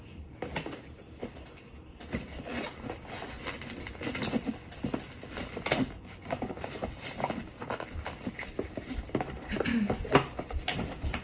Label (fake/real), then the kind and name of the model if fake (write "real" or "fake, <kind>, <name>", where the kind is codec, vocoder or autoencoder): real